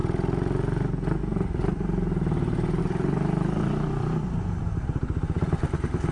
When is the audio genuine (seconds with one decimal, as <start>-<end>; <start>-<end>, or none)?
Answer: 0.0-2.8